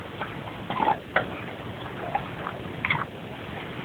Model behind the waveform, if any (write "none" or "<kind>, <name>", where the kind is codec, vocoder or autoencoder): none